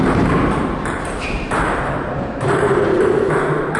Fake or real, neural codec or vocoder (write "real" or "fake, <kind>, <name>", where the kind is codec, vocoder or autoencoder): fake, vocoder, BigVGAN v2